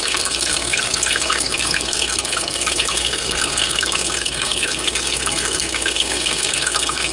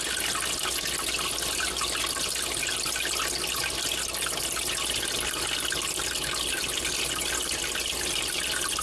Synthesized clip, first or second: first